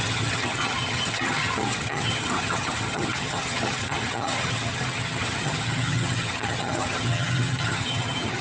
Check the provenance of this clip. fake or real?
fake